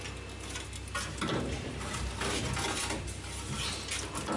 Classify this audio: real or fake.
real